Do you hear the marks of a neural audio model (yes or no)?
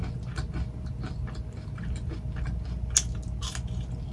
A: no